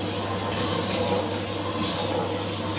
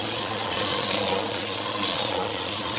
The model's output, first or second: second